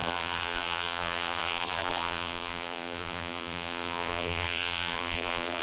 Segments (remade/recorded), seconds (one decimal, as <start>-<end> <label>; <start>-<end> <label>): 0.0-5.6 remade